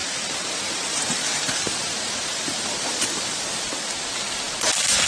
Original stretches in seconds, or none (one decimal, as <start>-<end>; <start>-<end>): 3.7-5.1